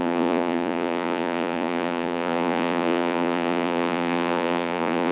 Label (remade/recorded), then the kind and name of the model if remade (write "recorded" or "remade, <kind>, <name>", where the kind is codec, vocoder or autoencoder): remade, vocoder, Vocos